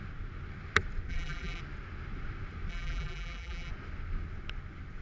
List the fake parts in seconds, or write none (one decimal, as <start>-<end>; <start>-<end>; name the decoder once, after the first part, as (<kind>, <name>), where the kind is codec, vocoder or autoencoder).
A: 1.1-1.6 (vocoder, BigVGAN v2); 2.7-3.7